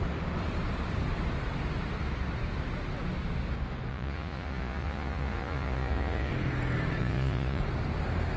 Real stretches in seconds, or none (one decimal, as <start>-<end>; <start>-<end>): 0.0-3.9; 6.3-7.0; 7.6-8.4